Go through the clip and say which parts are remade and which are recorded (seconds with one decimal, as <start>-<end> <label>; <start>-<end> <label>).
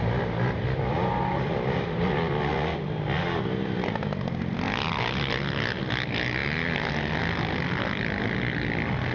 0.0-9.1 recorded